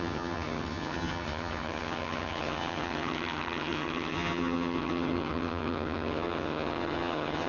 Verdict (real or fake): fake